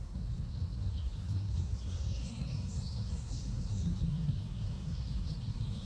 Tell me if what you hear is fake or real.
fake